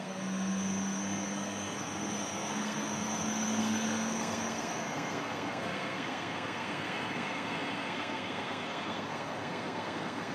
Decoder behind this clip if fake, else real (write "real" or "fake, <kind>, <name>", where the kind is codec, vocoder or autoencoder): fake, codec, SNAC